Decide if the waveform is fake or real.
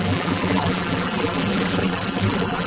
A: fake